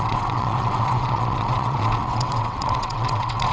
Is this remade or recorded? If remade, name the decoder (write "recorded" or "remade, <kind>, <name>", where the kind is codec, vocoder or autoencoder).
remade, vocoder, WaveNeXt